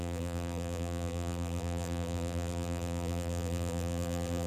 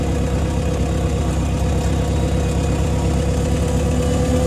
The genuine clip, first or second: second